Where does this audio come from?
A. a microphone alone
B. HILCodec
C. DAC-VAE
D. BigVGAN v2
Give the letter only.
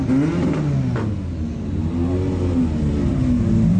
A